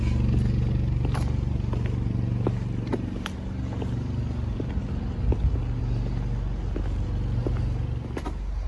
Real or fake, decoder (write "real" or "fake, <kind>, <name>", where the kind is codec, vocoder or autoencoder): real